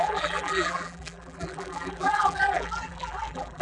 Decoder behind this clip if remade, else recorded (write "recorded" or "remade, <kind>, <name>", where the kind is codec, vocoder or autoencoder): remade, vocoder, BigVGAN v2